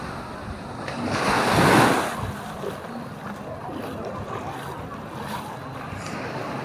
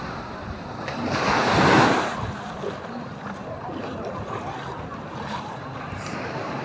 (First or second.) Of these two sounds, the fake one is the second